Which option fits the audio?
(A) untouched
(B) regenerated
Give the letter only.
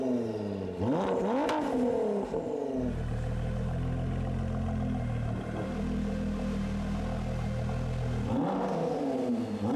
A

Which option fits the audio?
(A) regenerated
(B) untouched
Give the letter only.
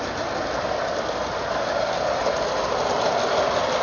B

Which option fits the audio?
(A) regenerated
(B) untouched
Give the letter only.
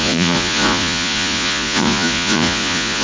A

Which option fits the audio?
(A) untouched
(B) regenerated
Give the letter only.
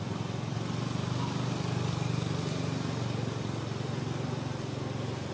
A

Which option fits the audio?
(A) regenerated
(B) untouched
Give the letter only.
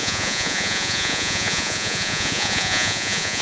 A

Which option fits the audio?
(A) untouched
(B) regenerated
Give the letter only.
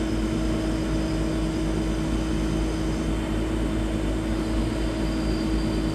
A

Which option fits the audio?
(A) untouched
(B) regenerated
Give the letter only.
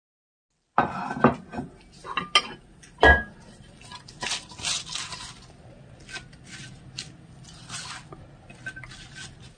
A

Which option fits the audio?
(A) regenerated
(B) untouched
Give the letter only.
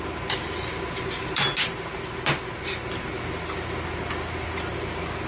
B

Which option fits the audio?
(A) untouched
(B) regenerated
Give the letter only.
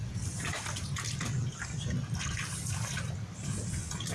A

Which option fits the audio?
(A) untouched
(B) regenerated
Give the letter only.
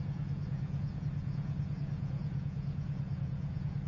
B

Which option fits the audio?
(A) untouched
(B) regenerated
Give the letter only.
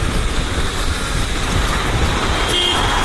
A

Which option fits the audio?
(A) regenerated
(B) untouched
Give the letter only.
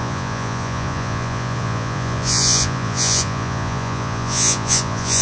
A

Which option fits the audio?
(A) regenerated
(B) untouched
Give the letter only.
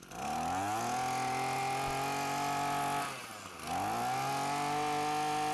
B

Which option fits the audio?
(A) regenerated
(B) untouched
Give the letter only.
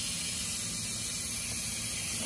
B